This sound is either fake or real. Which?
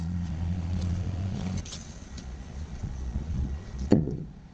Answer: fake